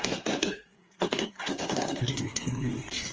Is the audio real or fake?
fake